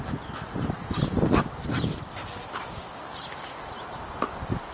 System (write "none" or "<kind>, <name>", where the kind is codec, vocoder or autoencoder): vocoder, BigVGAN v2